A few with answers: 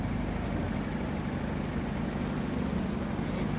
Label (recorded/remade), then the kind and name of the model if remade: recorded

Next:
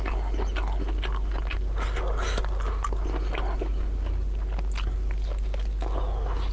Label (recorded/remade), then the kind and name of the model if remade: recorded